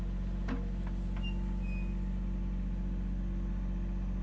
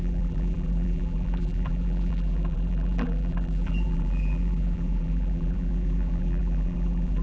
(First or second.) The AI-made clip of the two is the second